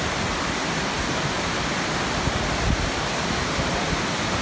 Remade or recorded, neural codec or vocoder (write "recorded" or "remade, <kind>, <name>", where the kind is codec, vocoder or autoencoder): recorded